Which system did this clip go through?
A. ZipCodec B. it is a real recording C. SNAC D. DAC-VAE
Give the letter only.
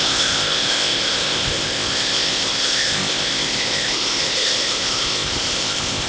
A